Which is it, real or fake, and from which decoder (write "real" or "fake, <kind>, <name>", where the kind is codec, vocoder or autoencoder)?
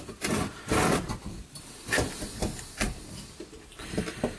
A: fake, vocoder, BigVGAN v2